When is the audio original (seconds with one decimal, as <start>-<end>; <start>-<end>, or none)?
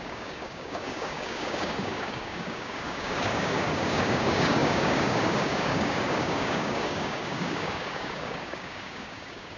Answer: none